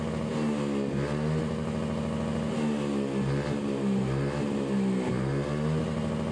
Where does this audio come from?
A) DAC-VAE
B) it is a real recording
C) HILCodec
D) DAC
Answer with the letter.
B